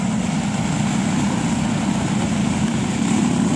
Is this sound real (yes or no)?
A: yes